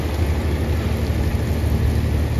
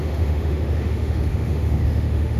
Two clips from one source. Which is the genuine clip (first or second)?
first